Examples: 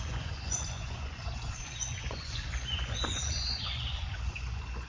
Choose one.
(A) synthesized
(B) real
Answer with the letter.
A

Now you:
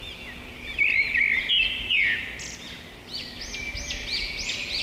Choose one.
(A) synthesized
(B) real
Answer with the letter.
B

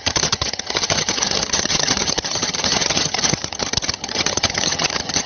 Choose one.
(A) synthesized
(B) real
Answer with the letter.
A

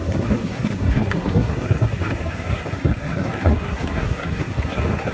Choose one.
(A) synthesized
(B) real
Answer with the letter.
A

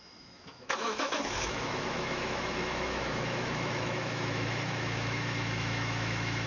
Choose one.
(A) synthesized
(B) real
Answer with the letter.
A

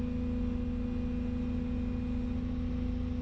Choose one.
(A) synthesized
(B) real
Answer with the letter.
B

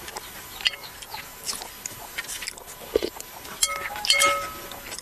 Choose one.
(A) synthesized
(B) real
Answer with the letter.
B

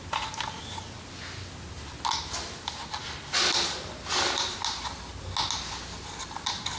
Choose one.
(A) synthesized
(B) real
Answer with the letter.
B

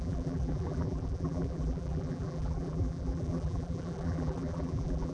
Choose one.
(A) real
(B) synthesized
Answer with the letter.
B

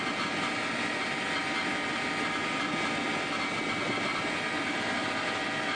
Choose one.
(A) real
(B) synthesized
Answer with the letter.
A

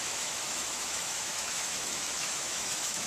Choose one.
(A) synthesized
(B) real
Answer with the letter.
A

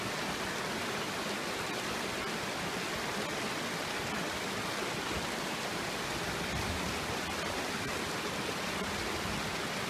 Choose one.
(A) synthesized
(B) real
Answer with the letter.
B